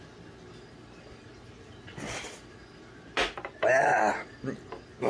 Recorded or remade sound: recorded